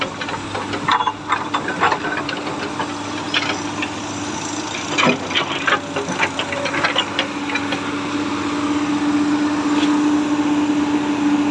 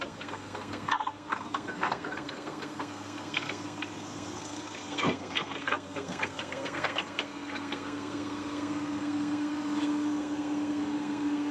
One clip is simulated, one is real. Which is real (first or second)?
first